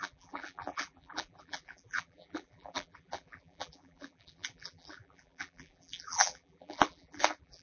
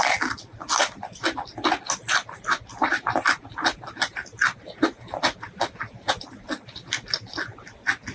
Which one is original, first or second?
second